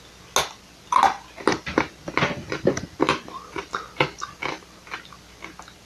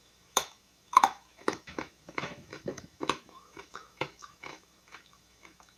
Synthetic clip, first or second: second